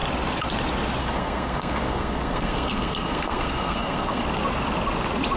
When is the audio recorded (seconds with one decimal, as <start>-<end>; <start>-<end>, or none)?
0.0-1.0; 4.2-5.4